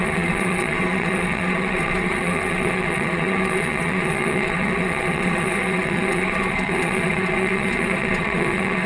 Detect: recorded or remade remade